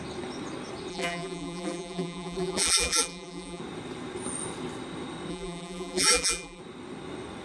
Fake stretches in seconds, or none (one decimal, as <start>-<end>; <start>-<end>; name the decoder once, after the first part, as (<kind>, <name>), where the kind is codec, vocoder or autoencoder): 0.9-3.6 (vocoder, BigVGAN v2); 5.3-6.6